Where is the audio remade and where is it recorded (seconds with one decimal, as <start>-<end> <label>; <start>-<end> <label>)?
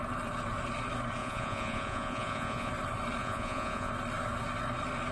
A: 0.0-1.2 recorded; 1.2-2.7 remade; 2.7-3.2 recorded; 3.2-3.9 remade; 3.9-5.1 recorded